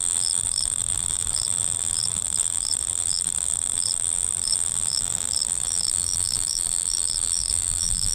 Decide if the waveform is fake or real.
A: fake